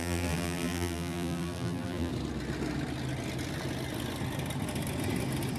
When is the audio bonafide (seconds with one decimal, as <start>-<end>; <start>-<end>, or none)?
2.1-5.6